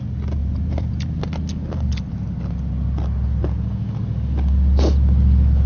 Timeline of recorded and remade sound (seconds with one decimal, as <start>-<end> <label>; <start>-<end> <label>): 0.0-0.4 recorded; 0.4-1.2 remade; 1.2-5.7 recorded